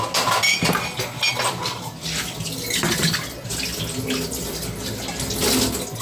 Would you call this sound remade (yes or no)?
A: no